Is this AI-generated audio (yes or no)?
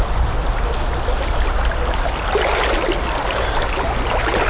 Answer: no